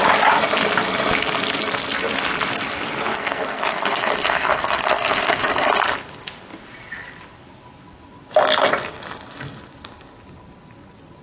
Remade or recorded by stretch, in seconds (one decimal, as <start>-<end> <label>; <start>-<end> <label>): 0.0-3.1 recorded; 3.1-5.7 remade; 5.7-11.2 recorded